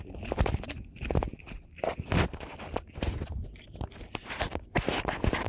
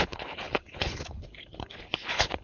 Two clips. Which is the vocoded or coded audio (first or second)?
second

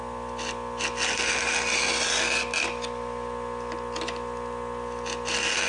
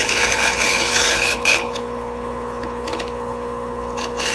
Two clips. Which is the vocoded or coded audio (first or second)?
second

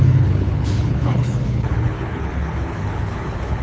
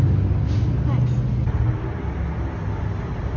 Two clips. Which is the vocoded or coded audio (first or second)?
first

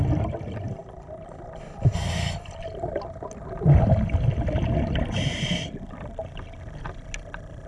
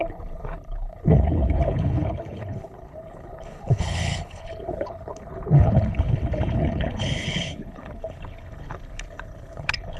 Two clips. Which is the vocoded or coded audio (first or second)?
second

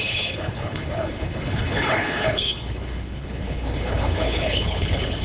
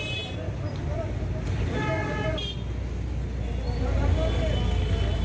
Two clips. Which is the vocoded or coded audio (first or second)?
first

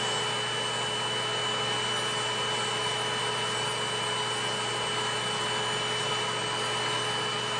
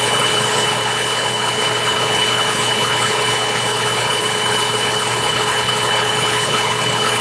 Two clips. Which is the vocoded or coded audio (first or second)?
second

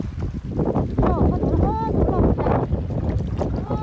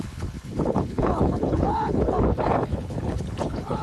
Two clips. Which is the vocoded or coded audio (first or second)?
second